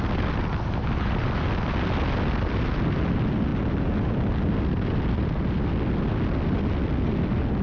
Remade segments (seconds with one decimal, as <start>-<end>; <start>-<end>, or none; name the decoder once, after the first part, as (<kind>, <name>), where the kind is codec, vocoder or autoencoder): none